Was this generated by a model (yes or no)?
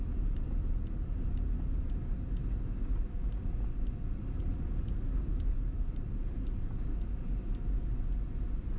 no